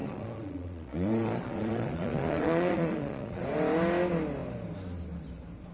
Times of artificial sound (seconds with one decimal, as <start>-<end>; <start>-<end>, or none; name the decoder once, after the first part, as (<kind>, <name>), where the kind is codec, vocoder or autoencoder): 0.0-3.4 (vocoder, Vocos)